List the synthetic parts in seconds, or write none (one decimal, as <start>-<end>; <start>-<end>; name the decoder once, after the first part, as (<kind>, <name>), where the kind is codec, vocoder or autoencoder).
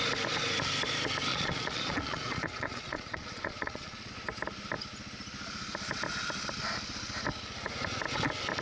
1.3-4.1 (vocoder, Vocos)